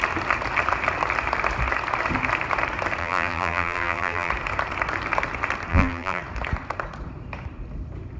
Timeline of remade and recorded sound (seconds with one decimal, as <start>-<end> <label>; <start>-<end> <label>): 0.0-3.0 recorded; 3.0-4.3 remade; 4.3-5.7 recorded; 5.7-6.2 remade; 6.2-8.2 recorded